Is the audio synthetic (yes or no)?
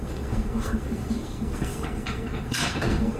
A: yes